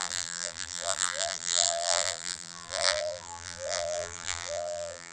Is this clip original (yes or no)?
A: no